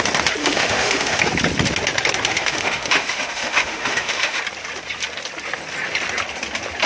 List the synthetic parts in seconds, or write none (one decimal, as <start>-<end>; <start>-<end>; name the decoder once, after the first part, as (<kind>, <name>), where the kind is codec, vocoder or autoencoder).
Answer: 0.4-1.2 (autoencoder, DAC-VAE); 2.3-4.4